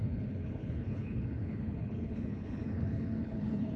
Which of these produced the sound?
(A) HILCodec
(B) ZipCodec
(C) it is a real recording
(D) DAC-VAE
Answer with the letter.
A